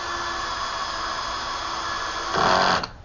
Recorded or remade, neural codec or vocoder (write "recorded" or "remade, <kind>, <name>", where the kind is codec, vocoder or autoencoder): recorded